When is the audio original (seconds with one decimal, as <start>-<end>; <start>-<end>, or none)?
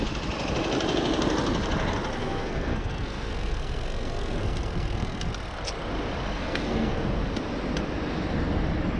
0.0-2.2; 5.3-6.4; 7.2-9.0